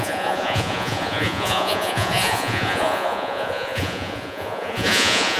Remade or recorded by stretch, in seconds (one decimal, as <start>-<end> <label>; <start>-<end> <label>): 0.0-5.4 remade